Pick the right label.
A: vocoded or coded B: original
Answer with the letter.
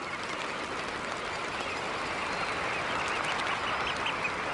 B